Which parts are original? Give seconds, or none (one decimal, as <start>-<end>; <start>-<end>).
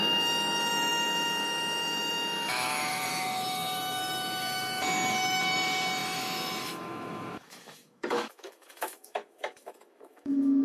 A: none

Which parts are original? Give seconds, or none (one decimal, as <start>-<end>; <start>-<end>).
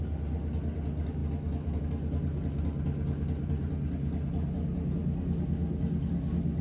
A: 0.0-6.6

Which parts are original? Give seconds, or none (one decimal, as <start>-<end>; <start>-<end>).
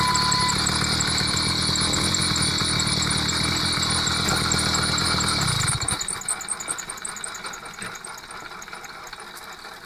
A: 0.0-9.9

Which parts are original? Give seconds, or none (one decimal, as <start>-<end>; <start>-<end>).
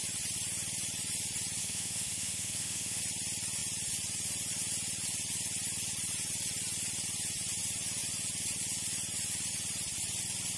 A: 0.0-1.6; 3.0-10.6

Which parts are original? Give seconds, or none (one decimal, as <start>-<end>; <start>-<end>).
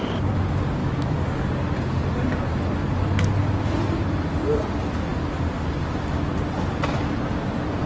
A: 0.0-0.8; 1.3-7.9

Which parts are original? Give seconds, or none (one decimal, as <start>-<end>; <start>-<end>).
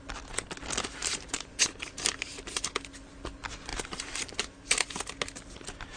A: 0.0-1.0; 2.7-3.7; 5.0-6.0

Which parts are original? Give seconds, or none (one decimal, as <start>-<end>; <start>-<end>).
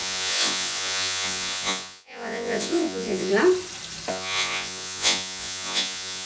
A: 3.3-4.1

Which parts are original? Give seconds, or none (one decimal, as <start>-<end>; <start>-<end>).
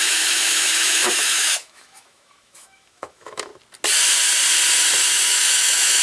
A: 3.5-5.2